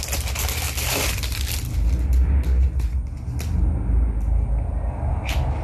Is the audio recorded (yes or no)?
yes